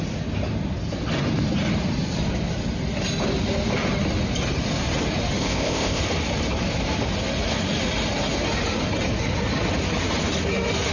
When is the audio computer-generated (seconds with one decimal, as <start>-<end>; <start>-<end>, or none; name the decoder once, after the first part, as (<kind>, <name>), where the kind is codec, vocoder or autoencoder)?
5.4-6.0 (codec, ZipCodec)